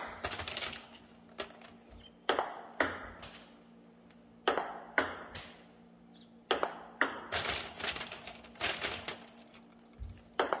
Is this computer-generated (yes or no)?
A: no